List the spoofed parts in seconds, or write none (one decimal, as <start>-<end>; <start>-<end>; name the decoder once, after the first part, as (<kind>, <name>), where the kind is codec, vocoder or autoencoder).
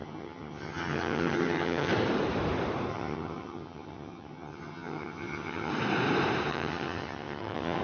0.0-1.9 (vocoder, HiFi-GAN); 2.9-5.7; 6.5-7.8